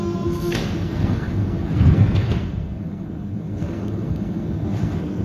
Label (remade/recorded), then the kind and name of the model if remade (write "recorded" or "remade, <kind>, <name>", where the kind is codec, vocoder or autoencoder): remade, codec, SNAC